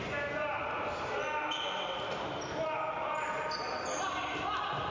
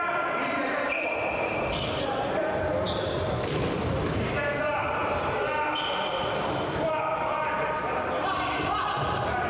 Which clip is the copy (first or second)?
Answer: second